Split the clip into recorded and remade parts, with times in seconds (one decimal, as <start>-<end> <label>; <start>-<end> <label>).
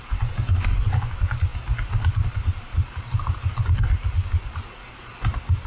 0.0-5.7 recorded